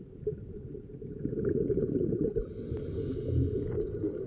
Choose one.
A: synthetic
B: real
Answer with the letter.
B